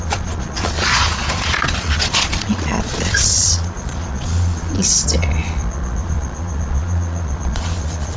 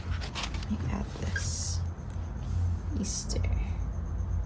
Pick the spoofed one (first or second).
first